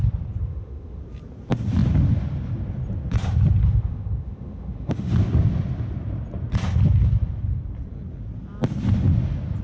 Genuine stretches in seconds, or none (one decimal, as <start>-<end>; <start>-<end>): 0.0-0.4; 1.0-3.6; 5.1-9.6